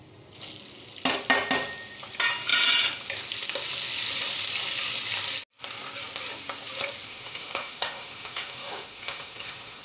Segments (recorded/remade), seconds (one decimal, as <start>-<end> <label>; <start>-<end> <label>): 0.0-7.1 recorded; 7.1-9.8 remade